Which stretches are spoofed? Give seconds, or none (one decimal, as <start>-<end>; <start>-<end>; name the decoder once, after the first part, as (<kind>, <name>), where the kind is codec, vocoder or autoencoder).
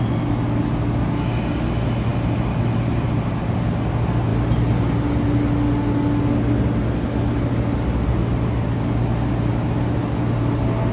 none